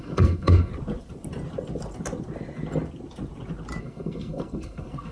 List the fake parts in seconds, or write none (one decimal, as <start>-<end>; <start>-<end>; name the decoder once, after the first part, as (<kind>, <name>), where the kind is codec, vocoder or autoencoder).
0.0-0.7 (codec, SNAC); 3.8-5.1